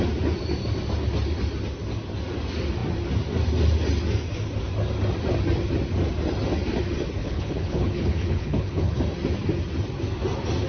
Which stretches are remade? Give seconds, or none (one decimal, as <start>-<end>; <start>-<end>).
7.2-9.0